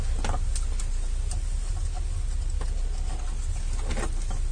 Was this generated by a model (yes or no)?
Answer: no